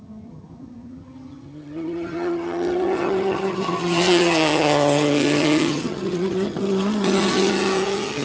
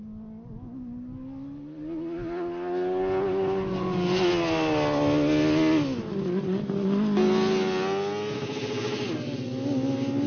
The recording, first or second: second